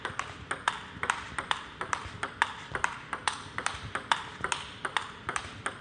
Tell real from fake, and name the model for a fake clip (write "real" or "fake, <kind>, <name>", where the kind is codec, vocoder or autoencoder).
real